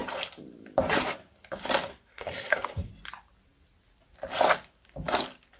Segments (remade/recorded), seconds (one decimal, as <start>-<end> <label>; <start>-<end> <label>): 0.0-1.9 recorded; 1.9-2.9 remade; 2.9-5.6 recorded